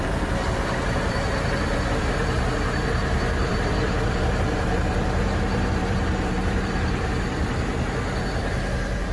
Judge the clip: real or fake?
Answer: fake